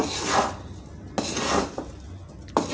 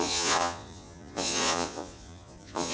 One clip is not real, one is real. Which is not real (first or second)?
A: second